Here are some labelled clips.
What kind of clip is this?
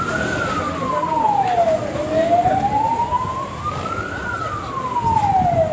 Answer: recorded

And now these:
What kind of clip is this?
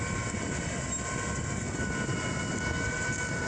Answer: recorded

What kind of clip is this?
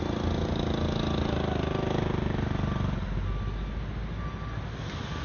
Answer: recorded